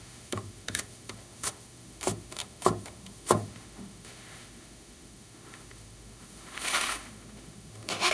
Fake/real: fake